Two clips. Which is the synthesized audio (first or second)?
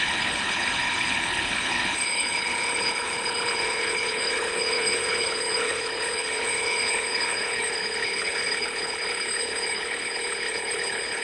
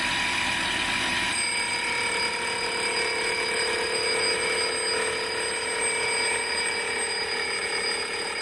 first